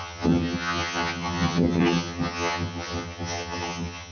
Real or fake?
fake